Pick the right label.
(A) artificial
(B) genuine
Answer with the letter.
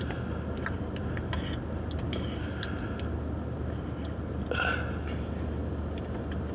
B